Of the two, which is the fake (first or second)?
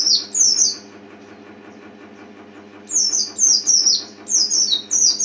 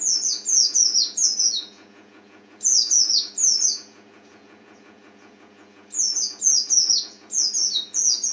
second